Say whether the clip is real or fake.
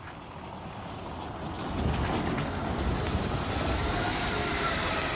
real